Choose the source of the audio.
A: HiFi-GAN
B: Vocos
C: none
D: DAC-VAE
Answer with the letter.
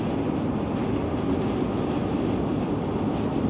C